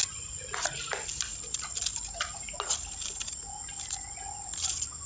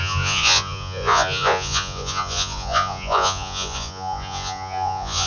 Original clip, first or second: first